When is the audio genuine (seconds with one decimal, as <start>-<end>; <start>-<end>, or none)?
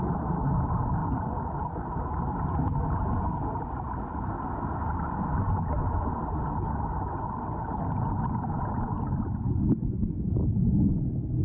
0.0-11.4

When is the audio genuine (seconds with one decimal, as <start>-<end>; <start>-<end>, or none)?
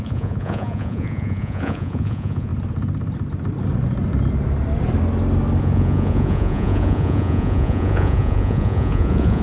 2.5-5.6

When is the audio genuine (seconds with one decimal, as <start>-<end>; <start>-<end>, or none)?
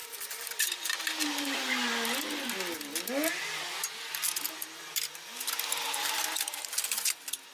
1.7-7.5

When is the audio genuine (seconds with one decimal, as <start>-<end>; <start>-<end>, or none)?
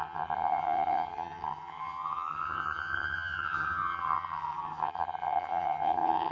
none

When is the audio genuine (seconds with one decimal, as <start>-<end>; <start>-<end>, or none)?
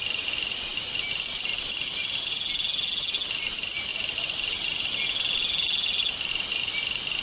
0.0-7.2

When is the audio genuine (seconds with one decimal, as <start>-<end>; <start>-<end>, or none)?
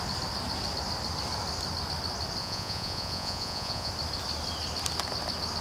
0.0-2.4; 3.9-5.6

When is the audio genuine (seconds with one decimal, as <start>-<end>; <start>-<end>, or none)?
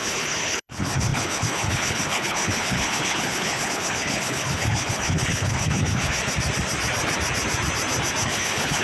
6.2-8.2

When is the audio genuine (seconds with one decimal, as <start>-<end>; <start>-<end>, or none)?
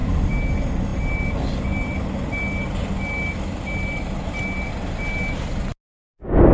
0.0-6.5